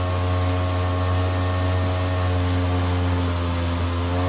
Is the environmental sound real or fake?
real